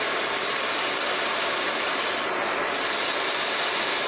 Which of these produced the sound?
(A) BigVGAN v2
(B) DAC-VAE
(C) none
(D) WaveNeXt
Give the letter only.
C